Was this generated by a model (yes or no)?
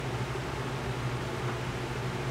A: no